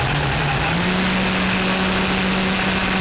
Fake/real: real